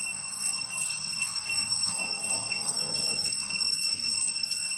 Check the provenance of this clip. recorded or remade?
remade